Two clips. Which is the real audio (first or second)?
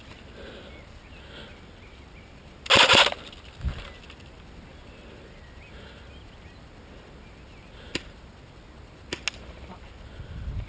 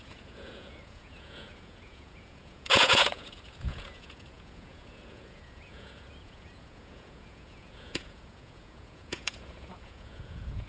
first